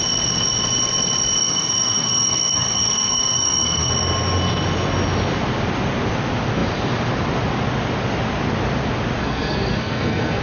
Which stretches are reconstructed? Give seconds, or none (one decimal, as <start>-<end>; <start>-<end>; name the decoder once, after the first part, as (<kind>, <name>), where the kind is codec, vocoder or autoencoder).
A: 1.4-3.9 (codec, SNAC); 9.2-10.4

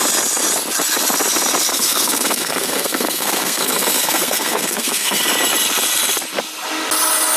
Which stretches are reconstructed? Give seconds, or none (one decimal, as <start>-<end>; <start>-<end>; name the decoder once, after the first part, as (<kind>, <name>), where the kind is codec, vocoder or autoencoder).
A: 1.7-5.2 (codec, SNAC)

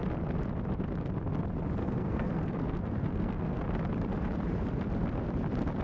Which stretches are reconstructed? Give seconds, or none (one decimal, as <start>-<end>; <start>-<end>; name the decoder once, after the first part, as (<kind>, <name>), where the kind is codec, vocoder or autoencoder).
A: 1.8-3.6 (codec, SNAC)

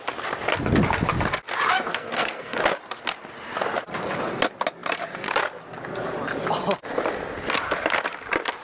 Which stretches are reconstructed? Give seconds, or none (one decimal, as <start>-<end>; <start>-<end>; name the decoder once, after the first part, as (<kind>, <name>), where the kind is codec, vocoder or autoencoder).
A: 1.9-2.6 (codec, SNAC)

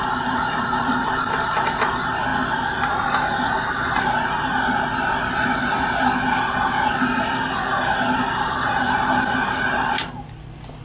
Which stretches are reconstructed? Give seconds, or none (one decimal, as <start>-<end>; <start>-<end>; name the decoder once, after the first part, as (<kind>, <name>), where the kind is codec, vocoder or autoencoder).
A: none

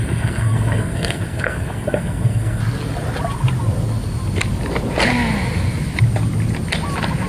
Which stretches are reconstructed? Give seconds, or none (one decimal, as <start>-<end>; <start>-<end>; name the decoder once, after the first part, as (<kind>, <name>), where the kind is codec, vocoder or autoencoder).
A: 0.0-2.6 (codec, SNAC)

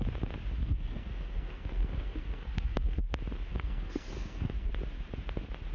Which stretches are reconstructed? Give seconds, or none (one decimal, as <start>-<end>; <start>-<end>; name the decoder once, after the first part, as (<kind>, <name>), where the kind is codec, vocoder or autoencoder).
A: 0.6-3.0 (codec, SNAC); 3.5-4.7

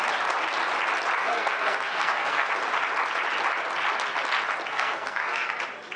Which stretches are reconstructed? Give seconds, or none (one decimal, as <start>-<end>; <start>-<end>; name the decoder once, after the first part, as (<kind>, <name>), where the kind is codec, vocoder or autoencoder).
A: 1.2-2.5 (codec, SNAC); 4.7-5.6